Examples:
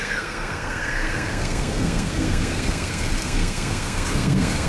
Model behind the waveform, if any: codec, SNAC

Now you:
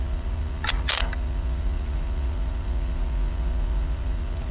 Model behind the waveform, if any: vocoder, Vocos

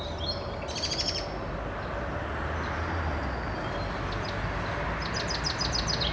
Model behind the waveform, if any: none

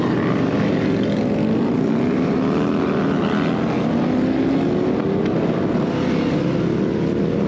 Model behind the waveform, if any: none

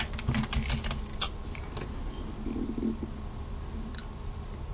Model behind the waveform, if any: none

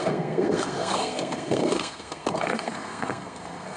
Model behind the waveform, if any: codec, SNAC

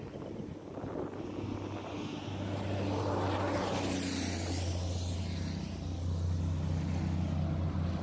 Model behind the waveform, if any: none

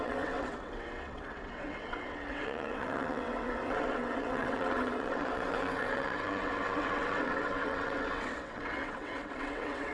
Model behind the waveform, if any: vocoder, WaveNeXt